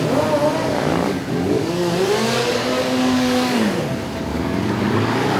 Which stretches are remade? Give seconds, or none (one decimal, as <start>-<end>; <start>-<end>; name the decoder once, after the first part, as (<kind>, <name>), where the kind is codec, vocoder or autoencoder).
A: 0.6-3.8 (codec, DAC); 4.3-5.4